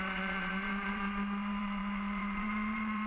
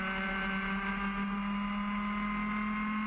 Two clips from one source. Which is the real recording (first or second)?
second